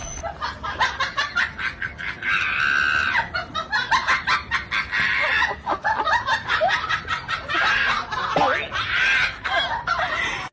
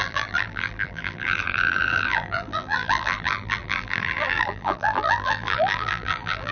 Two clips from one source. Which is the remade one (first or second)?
second